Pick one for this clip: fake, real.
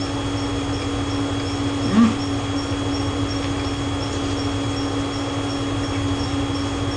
real